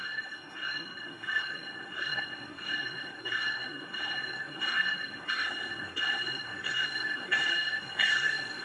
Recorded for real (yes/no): no